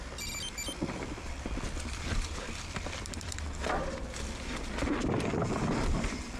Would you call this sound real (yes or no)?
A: no